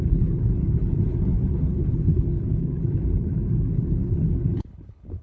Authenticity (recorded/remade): remade